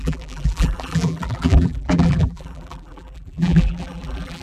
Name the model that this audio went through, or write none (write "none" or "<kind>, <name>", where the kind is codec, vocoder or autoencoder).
vocoder, BigVGAN v2